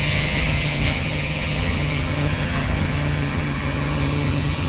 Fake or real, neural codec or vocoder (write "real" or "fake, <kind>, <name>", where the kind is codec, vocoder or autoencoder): fake, vocoder, HiFi-GAN